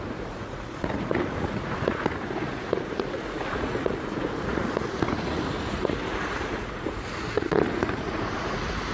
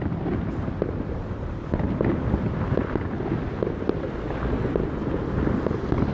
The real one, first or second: second